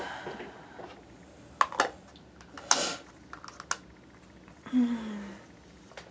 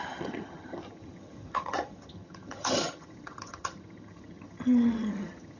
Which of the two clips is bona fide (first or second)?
first